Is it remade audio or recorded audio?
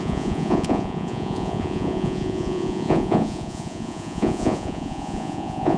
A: remade